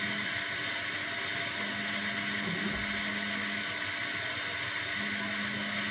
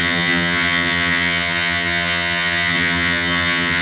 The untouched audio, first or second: first